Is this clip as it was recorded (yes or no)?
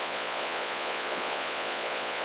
no